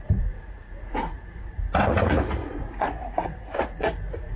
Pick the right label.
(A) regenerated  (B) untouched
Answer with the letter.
A